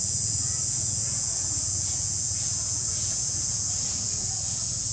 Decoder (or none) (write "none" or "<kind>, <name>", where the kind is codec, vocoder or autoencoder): vocoder, Vocos